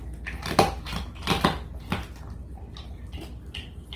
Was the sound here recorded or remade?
recorded